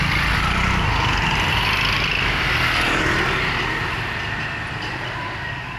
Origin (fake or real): real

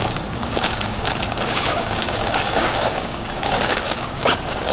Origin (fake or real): fake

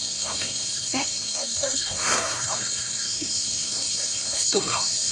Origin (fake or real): fake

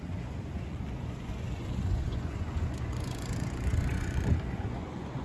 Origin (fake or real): fake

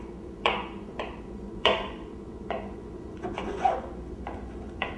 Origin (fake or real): fake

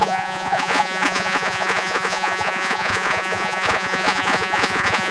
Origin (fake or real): fake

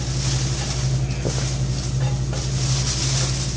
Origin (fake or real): real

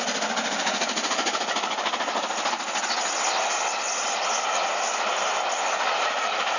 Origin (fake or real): real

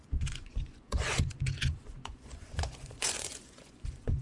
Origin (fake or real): fake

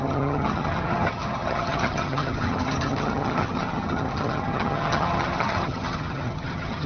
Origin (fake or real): fake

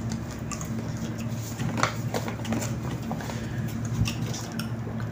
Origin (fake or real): real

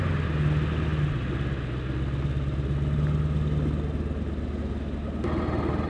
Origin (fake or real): real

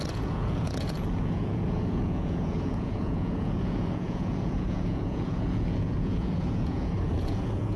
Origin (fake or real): fake